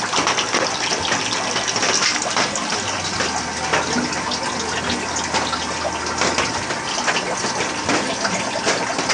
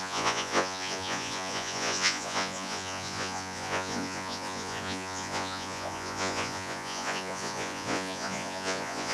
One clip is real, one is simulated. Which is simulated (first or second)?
second